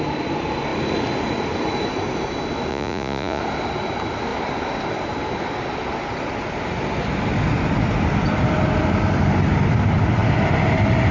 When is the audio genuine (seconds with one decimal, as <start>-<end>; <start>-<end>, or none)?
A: 0.0-2.7; 3.4-11.1